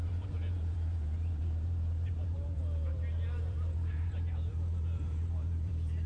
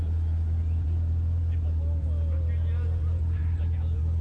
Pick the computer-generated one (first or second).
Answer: first